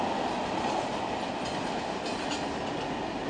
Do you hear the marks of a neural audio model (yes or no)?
no